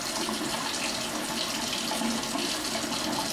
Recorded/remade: recorded